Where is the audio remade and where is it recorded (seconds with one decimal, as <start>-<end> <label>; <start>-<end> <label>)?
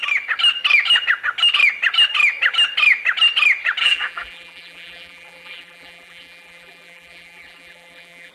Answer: 0.0-3.8 recorded; 3.8-8.3 remade